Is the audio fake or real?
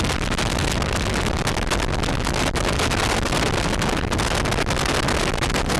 real